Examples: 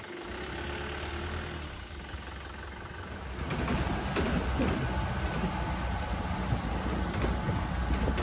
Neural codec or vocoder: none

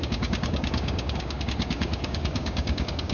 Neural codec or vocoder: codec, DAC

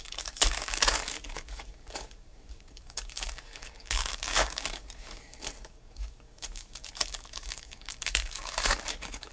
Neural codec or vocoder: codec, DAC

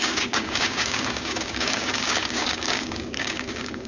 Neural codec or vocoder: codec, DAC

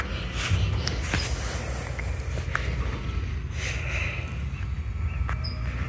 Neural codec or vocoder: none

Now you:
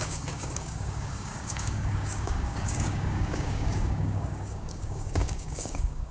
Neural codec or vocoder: codec, DAC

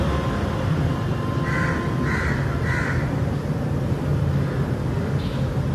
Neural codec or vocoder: none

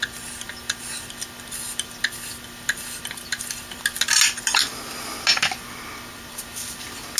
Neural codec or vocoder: none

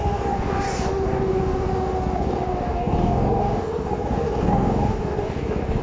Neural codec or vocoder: codec, DAC